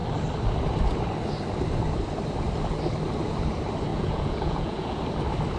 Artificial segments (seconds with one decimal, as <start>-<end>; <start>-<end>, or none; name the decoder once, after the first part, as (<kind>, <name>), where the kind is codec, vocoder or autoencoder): 3.9-5.0 (vocoder, Vocos)